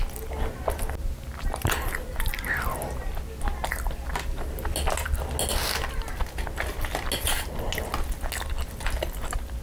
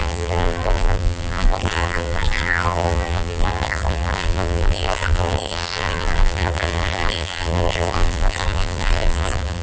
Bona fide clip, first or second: first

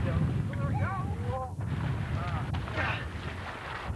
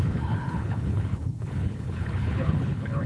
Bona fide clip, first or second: first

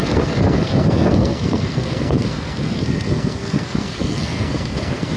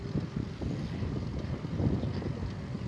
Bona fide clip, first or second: second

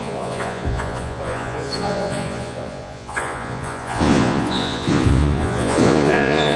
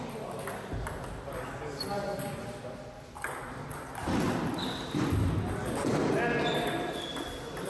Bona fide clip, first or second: second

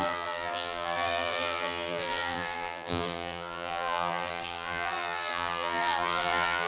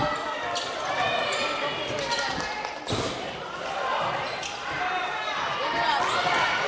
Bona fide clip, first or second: second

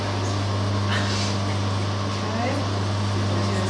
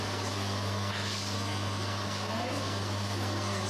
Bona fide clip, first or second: first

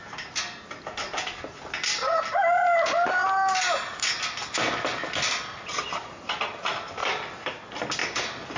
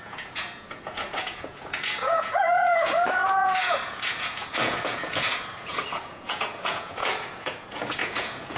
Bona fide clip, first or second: first